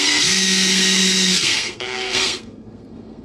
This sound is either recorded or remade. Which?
remade